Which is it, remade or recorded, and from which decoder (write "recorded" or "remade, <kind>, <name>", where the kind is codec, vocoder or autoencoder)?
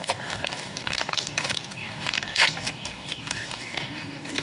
remade, codec, DAC